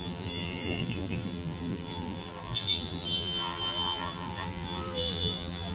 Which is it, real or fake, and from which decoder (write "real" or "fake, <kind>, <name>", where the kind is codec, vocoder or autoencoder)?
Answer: fake, vocoder, BigVGAN v2